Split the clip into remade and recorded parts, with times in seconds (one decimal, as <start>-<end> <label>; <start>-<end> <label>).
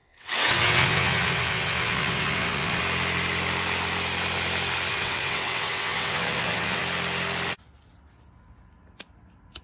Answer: 0.0-2.8 remade; 2.8-4.9 recorded; 4.9-6.8 remade; 6.8-9.6 recorded